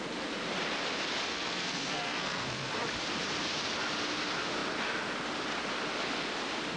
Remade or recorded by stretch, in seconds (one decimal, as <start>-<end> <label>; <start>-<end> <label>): 0.0-1.3 recorded; 1.3-2.7 remade; 2.7-6.8 recorded